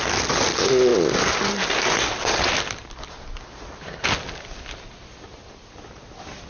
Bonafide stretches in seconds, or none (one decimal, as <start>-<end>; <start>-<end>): 0.0-6.5